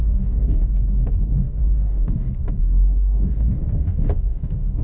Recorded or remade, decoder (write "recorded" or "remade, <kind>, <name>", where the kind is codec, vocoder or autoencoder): remade, codec, DAC